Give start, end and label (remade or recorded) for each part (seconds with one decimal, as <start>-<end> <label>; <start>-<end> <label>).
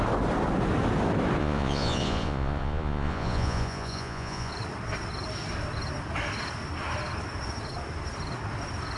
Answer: 0.0-1.4 recorded; 1.4-4.5 remade; 4.5-9.0 recorded